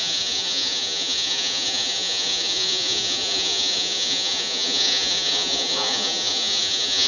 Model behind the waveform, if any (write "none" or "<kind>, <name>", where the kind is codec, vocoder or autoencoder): vocoder, Vocos